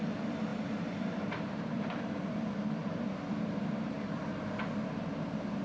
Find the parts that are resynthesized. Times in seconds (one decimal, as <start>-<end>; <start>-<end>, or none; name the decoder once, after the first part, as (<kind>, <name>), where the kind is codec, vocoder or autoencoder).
0.5-2.3 (vocoder, BigVGAN v2); 2.8-4.6